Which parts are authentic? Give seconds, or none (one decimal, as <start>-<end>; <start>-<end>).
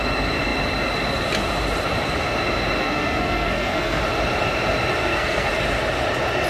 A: 0.0-2.8; 4.0-5.0; 5.5-6.5